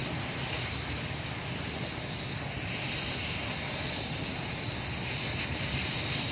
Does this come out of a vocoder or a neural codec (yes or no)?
no